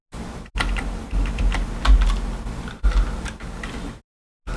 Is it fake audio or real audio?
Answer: real